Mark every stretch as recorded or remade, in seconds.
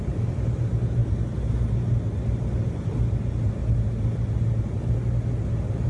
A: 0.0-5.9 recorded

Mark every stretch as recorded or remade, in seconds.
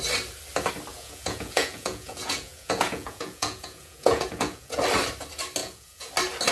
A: 0.0-0.9 recorded; 0.9-4.8 remade; 4.8-5.6 recorded; 5.6-6.1 remade; 6.1-6.5 recorded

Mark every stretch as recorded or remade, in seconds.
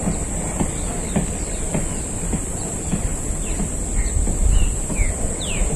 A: 0.0-5.8 recorded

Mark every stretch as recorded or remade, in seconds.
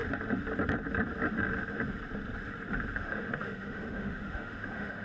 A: 0.0-3.0 recorded; 3.0-5.0 remade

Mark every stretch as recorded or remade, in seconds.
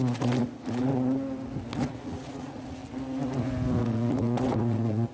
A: 0.0-0.9 remade; 0.9-1.8 recorded; 1.8-2.8 remade; 2.8-3.8 recorded; 3.8-5.1 remade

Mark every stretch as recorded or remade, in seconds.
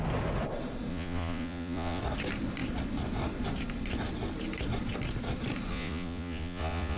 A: 0.0-0.9 recorded; 0.9-2.0 remade; 2.0-5.7 recorded; 5.7-7.0 remade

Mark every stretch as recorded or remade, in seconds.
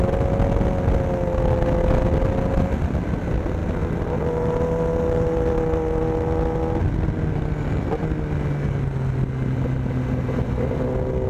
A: 0.0-11.3 recorded